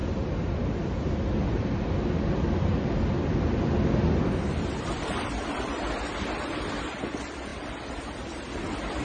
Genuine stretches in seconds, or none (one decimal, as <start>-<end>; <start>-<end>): 0.0-9.0

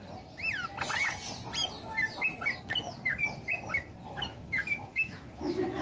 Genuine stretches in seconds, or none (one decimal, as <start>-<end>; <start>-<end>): 0.0-4.3

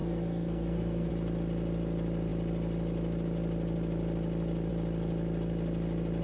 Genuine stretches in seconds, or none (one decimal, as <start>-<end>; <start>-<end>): 1.1-6.2

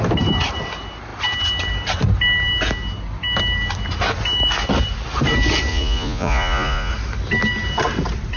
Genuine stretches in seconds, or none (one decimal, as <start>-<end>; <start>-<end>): 0.0-5.7; 6.9-8.4

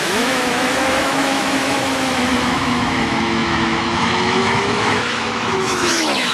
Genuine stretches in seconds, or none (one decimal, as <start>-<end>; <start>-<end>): none

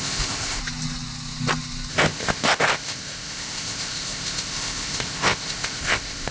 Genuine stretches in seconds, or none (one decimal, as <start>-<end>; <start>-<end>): 0.6-1.9

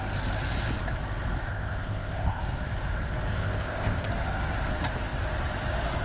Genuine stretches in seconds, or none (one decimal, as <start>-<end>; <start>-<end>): 0.0-1.5; 2.4-3.3; 4.1-6.0